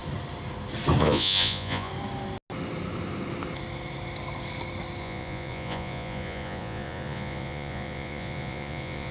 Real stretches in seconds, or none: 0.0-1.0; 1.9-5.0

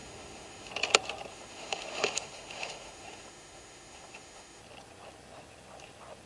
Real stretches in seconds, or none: 0.7-1.3; 4.6-6.3

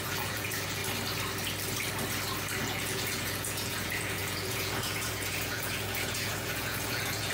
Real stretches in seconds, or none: 0.8-2.6

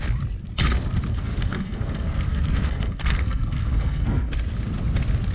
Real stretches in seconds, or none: 0.0-1.1; 4.3-5.3